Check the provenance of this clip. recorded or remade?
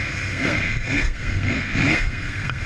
remade